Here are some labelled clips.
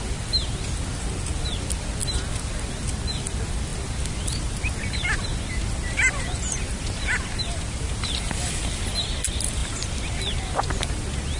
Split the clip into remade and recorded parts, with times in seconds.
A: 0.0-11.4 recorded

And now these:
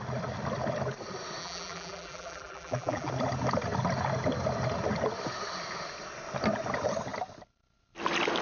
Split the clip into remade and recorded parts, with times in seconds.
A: 0.0-1.4 recorded; 1.4-3.1 remade; 3.1-8.4 recorded

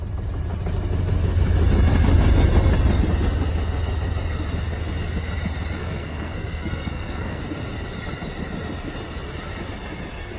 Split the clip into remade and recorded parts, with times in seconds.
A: 0.0-5.8 recorded; 5.8-7.4 remade; 7.4-10.4 recorded

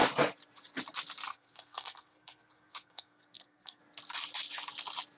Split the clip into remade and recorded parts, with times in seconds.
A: 0.0-1.3 recorded; 1.3-3.8 remade; 3.8-5.2 recorded

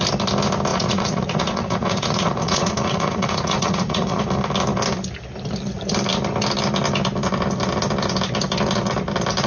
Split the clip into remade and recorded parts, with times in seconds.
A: 0.0-0.7 recorded; 0.7-4.2 remade; 4.2-9.5 recorded